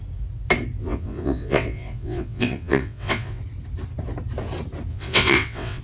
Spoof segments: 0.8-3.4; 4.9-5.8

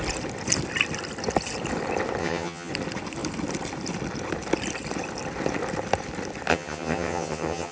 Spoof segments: 2.2-2.7; 6.5-7.7

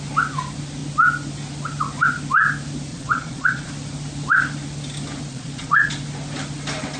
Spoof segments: 2.9-3.7; 5.3-5.9

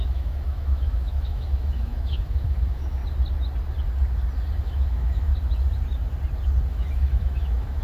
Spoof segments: 0.0-3.0; 4.6-5.3; 6.7-7.8